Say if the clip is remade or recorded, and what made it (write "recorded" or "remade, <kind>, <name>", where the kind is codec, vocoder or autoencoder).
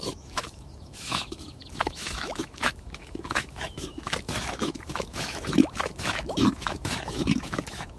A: remade, autoencoder, DAC-VAE